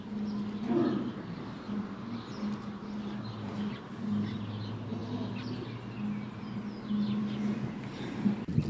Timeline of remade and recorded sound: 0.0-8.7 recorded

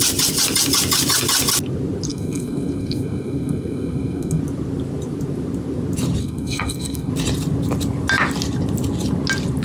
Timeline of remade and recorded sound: 0.0-2.1 recorded; 2.1-4.4 remade; 4.4-6.2 recorded; 6.2-7.1 remade; 7.1-9.6 recorded